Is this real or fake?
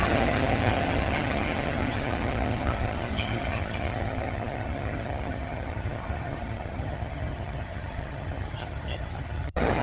fake